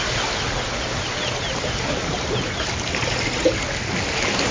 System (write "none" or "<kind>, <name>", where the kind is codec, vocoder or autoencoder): none